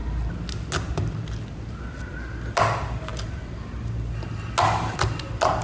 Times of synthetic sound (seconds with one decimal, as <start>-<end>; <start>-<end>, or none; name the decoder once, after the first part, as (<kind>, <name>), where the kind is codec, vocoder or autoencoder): none